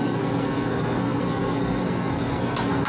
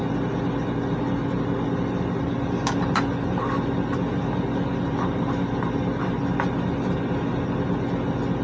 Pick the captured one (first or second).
second